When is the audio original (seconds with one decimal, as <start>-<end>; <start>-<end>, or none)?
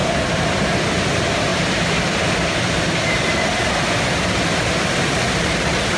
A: 0.7-1.5; 2.8-6.0